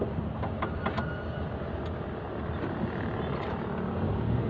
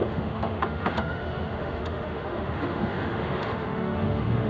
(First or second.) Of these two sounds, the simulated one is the second